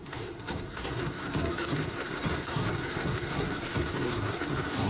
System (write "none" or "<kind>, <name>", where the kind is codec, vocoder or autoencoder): codec, SNAC